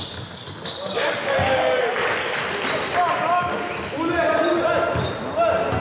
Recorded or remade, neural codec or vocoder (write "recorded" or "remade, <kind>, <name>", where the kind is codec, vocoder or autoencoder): recorded